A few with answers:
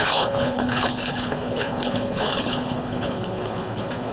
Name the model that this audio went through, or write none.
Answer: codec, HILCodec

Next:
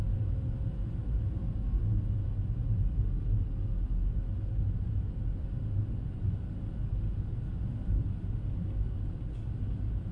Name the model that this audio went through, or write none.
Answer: none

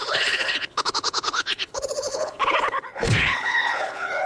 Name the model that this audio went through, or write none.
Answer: codec, HILCodec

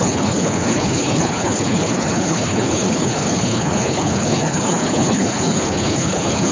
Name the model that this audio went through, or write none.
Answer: codec, HILCodec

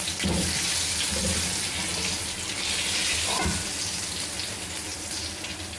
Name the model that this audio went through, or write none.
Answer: none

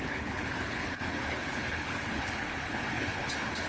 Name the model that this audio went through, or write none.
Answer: codec, HILCodec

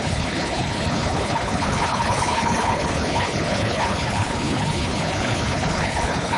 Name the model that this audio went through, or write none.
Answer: codec, HILCodec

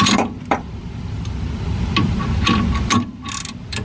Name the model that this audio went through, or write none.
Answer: none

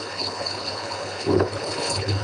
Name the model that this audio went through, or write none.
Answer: codec, HILCodec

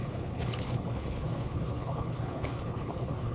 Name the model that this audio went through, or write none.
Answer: codec, HILCodec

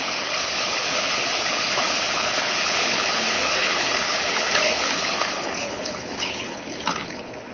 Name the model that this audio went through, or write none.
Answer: codec, HILCodec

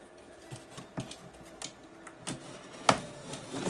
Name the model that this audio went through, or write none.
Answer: none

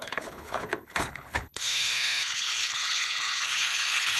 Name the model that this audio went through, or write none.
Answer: codec, HILCodec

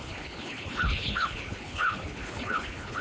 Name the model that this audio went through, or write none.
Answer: codec, HILCodec